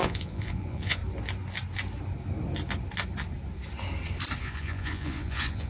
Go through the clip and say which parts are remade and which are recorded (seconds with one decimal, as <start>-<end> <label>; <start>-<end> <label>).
0.0-1.0 remade; 1.0-4.4 recorded; 4.4-5.7 remade